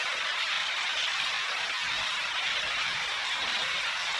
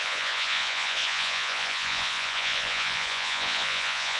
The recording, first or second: first